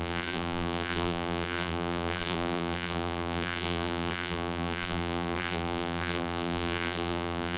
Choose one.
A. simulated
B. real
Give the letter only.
A